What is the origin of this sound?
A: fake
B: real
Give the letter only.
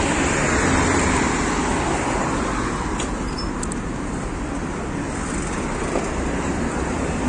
B